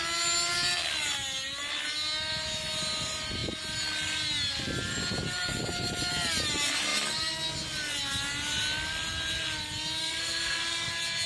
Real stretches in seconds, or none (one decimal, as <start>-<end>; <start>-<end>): 0.0-10.0; 10.9-11.3